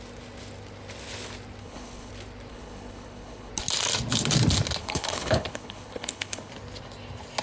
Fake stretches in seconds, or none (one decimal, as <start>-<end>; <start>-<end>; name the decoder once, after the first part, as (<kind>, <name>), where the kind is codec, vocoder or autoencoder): 1.6-2.1 (codec, HILCodec); 2.5-3.5; 4.8-6.5